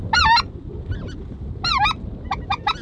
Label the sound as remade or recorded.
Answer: recorded